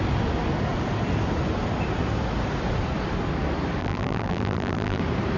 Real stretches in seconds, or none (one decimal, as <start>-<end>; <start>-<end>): 0.0-3.8; 5.0-5.4